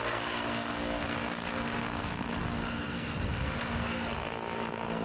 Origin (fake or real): fake